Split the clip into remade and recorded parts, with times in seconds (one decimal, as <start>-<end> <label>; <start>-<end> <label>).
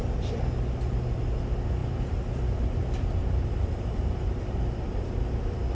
0.0-1.8 recorded; 1.8-5.2 remade; 5.2-5.7 recorded